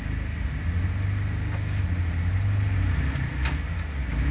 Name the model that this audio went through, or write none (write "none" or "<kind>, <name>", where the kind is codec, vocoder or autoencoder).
none